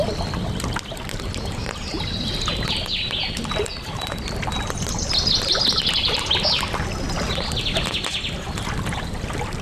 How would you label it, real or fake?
real